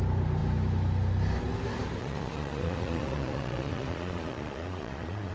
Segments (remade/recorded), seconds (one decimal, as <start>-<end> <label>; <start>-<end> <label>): 0.0-2.0 recorded; 2.0-5.3 remade